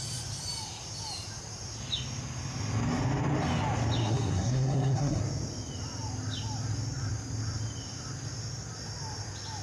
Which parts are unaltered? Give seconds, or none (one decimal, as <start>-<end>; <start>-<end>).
0.0-4.0; 5.2-9.6